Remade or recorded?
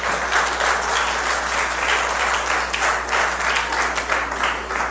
recorded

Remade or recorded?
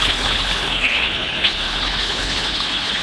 remade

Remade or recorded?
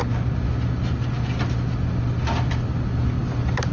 recorded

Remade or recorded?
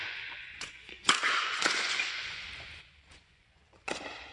remade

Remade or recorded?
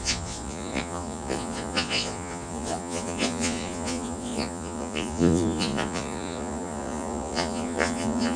remade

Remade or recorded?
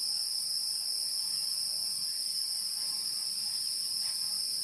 recorded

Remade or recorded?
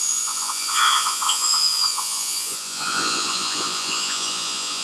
remade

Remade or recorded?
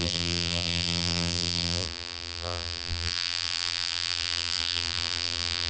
remade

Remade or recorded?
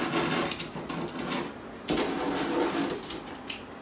recorded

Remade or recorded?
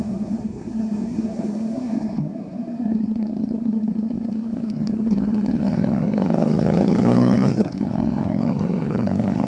remade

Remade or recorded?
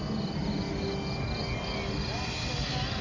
recorded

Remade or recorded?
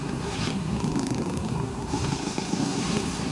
remade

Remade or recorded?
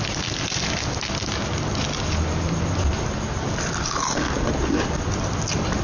recorded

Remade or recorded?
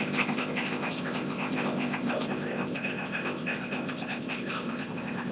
remade